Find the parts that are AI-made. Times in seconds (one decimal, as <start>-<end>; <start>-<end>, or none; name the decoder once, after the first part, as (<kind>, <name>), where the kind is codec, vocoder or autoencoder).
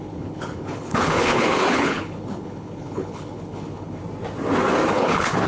0.0-4.0 (codec, HILCodec); 4.9-5.5